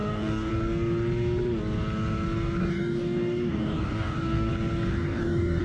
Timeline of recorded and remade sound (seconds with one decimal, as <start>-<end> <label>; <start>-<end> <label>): 0.0-0.5 remade; 0.5-2.6 recorded; 2.6-4.5 remade; 4.5-4.9 recorded; 4.9-5.6 remade